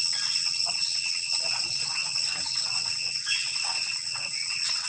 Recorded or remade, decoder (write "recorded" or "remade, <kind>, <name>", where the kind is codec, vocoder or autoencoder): remade, vocoder, WaveNeXt